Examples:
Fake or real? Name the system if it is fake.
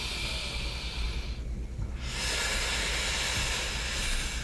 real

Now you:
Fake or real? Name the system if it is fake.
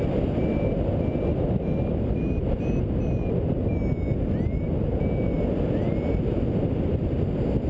real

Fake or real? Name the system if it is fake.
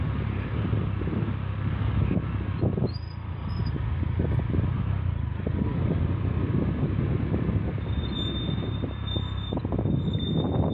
fake, vocoder, BigVGAN v2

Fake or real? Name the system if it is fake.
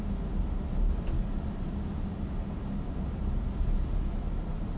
real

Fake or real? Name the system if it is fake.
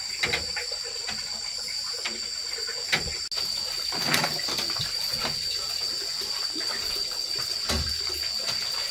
real